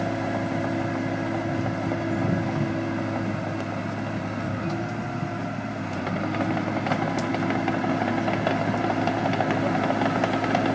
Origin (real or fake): real